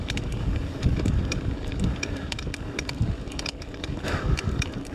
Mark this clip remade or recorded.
remade